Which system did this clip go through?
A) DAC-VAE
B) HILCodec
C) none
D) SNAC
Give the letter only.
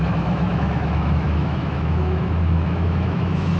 A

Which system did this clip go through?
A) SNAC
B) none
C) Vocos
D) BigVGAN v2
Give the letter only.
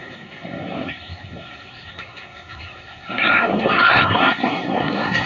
A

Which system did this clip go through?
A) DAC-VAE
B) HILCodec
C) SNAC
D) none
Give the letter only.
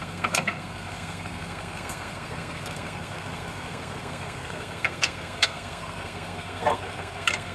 C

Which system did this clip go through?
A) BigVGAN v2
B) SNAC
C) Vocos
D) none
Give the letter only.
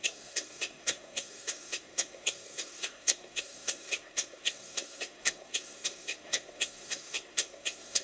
B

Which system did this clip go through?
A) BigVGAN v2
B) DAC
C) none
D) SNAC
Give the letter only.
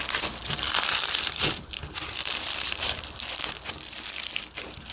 A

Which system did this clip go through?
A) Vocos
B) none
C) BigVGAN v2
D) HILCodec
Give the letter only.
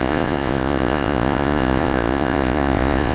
A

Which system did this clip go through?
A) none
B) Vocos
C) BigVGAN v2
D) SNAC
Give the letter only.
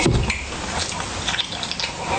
A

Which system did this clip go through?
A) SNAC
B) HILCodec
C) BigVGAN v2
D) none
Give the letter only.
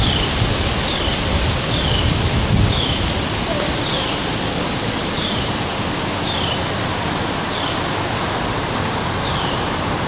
C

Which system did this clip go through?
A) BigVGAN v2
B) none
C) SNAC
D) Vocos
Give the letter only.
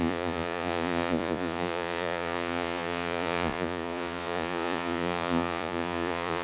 D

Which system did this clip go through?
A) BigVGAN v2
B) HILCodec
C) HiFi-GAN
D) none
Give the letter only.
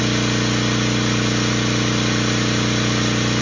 D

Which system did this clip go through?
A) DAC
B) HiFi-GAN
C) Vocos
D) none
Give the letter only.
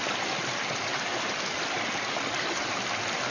D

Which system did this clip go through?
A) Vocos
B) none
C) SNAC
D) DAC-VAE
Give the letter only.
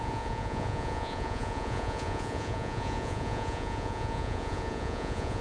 A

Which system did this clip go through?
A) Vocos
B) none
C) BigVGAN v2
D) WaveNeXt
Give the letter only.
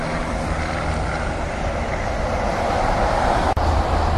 C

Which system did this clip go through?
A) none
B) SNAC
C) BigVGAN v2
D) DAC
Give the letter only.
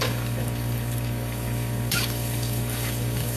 D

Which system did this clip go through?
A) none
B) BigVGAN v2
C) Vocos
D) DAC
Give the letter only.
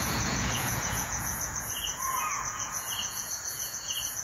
C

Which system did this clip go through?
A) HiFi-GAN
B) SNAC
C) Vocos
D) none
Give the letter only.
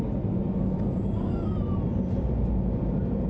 D